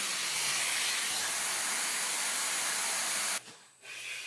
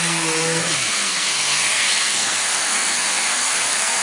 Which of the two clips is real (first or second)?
first